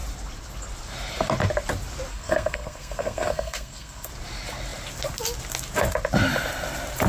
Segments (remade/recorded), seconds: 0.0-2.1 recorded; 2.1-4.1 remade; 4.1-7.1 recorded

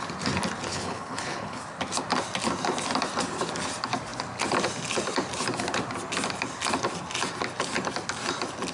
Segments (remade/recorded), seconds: 0.0-0.7 recorded; 0.7-1.6 remade; 1.6-8.7 recorded

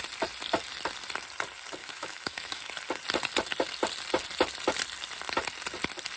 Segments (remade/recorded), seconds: 0.0-1.8 recorded; 1.8-2.7 remade; 2.7-6.2 recorded

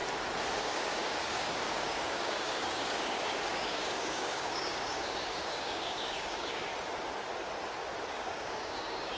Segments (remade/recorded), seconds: 0.0-0.6 recorded; 0.6-6.7 remade; 6.7-8.1 recorded; 8.1-9.2 remade

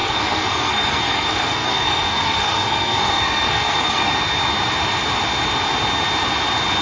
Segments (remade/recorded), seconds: 0.0-4.1 remade; 4.1-6.8 recorded

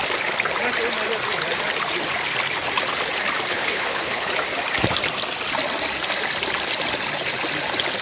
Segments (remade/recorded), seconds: 0.0-3.5 recorded; 3.5-4.3 remade; 4.3-8.0 recorded